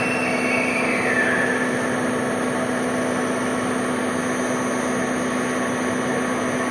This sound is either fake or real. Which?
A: real